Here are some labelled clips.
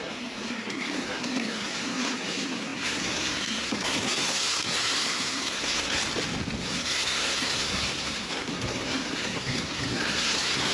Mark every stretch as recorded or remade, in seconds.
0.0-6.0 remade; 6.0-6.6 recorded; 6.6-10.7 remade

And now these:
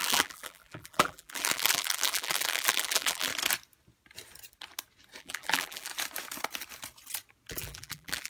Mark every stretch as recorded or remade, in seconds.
0.0-3.3 remade; 3.3-5.2 recorded; 5.2-5.9 remade; 5.9-7.5 recorded; 7.5-8.3 remade

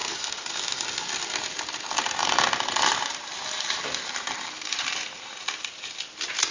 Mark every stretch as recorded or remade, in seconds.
0.0-0.8 remade; 0.8-2.2 recorded; 2.2-5.6 remade; 5.6-6.5 recorded